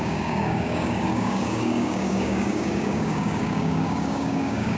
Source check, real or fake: fake